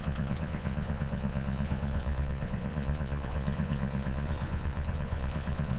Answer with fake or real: fake